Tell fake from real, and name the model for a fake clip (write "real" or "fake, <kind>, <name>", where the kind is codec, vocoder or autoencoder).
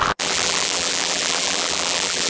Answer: fake, vocoder, BigVGAN v2